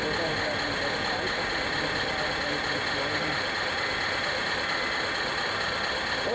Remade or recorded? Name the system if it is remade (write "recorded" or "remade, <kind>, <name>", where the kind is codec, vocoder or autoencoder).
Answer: recorded